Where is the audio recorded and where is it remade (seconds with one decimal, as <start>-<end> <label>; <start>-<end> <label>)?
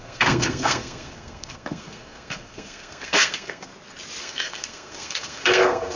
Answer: 0.0-3.7 remade; 3.7-4.2 recorded; 4.2-6.0 remade